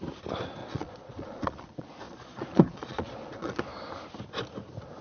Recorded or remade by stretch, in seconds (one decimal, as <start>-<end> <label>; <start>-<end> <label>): 0.0-0.6 recorded; 0.6-3.6 remade; 3.6-5.0 recorded